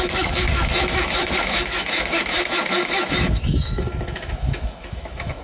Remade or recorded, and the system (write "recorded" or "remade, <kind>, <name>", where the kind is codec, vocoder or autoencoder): remade, autoencoder, DAC-VAE